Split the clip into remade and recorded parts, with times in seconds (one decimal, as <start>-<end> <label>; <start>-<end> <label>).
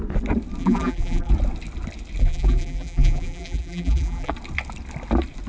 0.0-0.6 recorded; 0.6-1.3 remade; 1.3-2.2 recorded; 2.2-4.3 remade; 4.3-5.5 recorded